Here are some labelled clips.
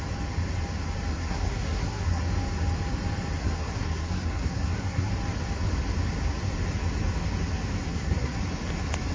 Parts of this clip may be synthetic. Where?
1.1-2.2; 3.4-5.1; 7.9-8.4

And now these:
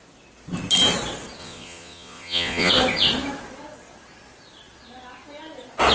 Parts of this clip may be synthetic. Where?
1.4-2.7

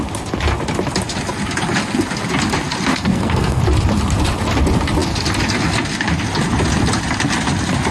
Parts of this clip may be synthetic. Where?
2.9-3.6

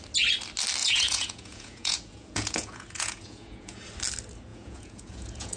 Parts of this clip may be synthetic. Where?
0.8-3.8; 4.5-5.6

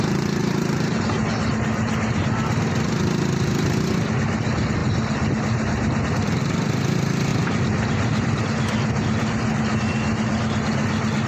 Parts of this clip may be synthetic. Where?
0.4-1.3; 7.3-8.4

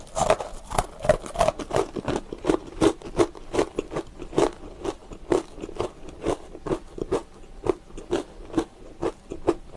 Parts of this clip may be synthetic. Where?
none

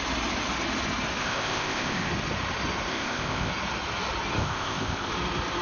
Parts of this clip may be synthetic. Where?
1.2-2.1; 2.9-3.5; 4.4-5.1